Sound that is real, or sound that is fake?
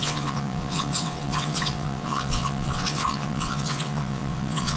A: fake